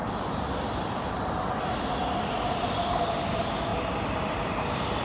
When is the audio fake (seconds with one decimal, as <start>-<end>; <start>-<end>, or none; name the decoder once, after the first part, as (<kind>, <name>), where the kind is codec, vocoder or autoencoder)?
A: none